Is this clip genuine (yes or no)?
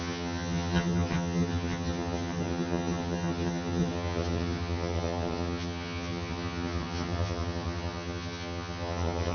no